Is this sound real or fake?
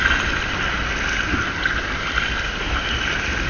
real